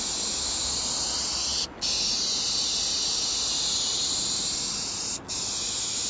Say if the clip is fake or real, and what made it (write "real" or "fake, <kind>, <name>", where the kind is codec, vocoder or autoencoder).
real